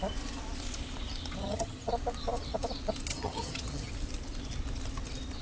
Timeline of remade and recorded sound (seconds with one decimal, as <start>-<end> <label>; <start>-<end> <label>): 0.0-1.4 recorded; 1.4-1.9 remade; 1.9-3.1 recorded; 3.1-3.9 remade; 3.9-5.4 recorded